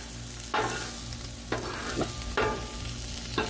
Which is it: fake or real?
real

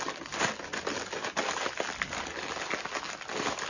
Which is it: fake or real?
real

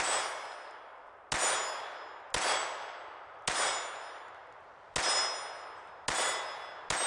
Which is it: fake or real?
real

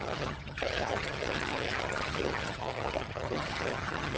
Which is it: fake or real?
fake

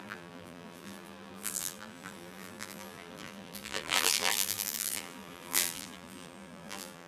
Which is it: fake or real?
fake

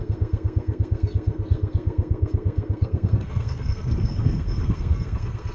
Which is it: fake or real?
fake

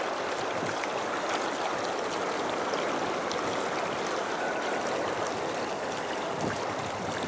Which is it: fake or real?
real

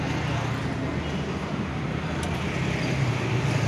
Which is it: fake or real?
real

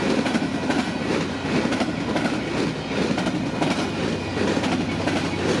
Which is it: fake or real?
real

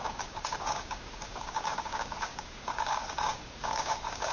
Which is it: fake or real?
fake